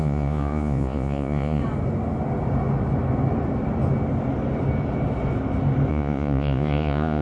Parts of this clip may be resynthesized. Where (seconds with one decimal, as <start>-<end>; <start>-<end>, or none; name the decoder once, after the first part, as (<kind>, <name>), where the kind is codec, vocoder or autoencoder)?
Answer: 0.0-1.6 (vocoder, Vocos); 5.9-7.2